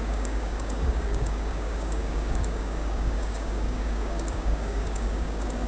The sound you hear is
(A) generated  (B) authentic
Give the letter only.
A